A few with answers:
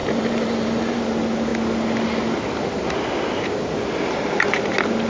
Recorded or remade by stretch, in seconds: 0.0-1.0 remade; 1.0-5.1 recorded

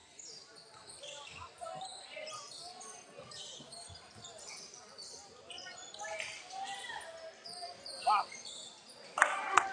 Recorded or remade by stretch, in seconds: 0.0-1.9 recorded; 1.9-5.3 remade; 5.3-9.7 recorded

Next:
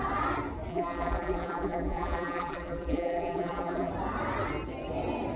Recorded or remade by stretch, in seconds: 0.0-0.7 recorded; 0.7-3.9 remade; 3.9-5.4 recorded

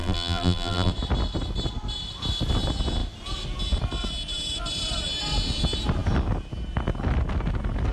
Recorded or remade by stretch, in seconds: 0.0-0.9 remade; 0.9-7.9 recorded